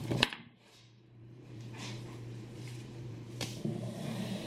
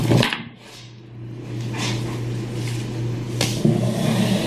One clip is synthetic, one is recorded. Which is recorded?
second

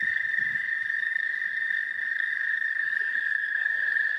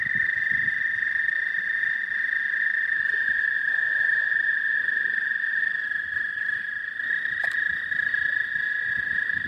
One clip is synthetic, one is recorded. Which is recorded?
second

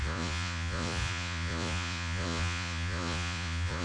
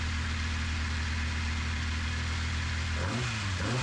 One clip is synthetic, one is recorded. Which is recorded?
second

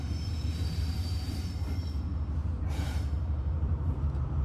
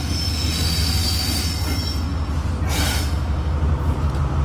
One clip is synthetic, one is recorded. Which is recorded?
second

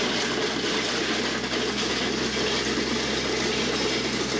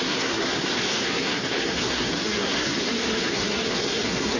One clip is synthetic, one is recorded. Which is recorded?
first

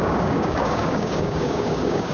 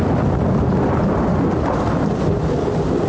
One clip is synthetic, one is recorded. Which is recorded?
second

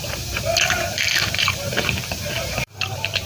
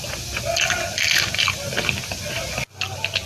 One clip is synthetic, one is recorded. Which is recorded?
second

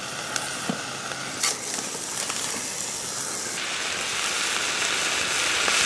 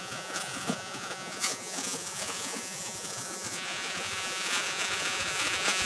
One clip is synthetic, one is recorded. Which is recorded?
first